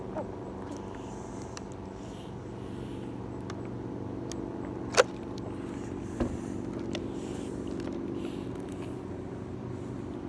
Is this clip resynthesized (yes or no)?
no